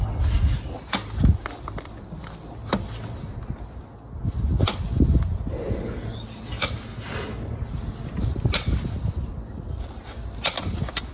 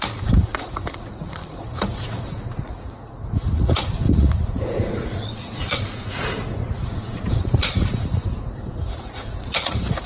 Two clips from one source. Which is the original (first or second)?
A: first